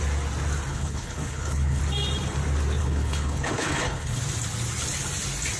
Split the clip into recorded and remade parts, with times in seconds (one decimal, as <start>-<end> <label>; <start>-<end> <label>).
0.0-0.7 recorded; 0.7-1.8 remade; 1.8-2.8 recorded; 2.8-4.2 remade; 4.2-5.6 recorded